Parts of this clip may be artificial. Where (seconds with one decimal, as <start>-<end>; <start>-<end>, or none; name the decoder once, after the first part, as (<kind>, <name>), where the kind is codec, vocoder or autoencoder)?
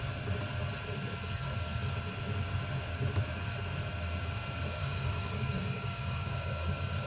4.8-7.1 (codec, DAC)